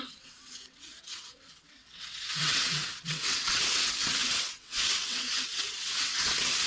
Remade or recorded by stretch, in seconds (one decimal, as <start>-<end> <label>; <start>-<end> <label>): 0.0-6.7 remade